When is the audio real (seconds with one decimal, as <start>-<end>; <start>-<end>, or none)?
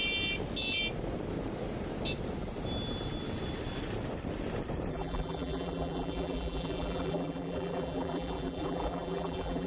0.0-4.9